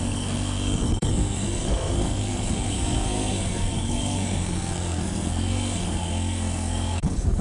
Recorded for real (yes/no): no